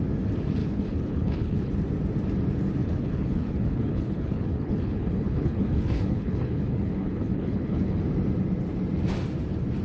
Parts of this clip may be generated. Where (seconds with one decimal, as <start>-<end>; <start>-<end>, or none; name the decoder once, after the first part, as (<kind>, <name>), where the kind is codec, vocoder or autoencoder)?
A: 0.6-1.7 (codec, HILCodec); 2.8-8.0